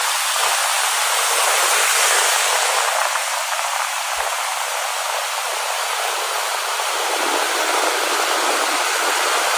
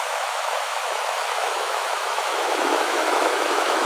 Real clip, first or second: first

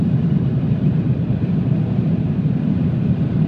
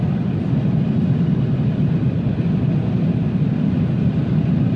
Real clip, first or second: second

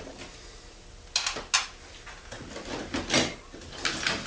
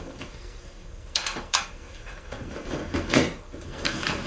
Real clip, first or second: first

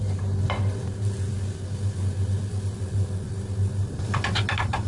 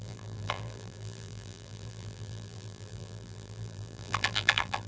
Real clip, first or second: first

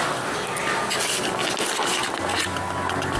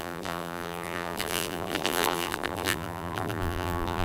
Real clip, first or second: first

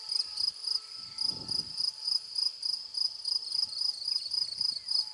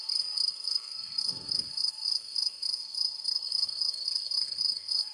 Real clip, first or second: first